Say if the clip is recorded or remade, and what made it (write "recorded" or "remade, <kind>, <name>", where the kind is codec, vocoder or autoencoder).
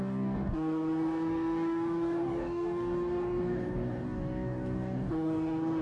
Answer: remade, codec, DAC